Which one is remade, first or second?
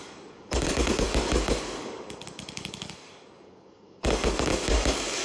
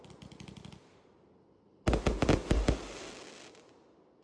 first